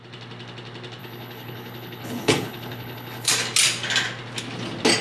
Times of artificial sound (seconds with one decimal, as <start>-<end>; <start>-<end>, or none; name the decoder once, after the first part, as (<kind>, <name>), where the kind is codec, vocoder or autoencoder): 1.0-3.3 (codec, HILCodec)